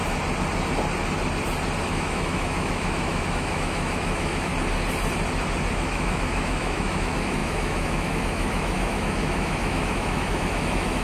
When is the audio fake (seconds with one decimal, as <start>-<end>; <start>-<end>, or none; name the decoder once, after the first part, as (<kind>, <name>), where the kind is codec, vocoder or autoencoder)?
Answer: 1.8-4.5 (autoencoder, DAC-VAE); 5.7-11.0